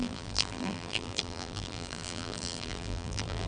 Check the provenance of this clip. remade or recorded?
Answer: remade